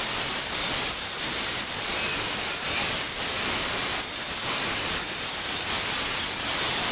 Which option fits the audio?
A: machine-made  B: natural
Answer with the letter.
B